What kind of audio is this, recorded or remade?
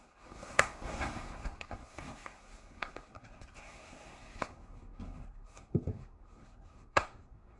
remade